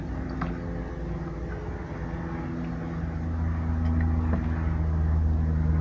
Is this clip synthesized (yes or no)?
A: no